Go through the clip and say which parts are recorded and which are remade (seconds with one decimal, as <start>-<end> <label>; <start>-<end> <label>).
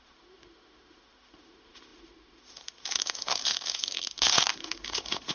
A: 0.0-5.3 remade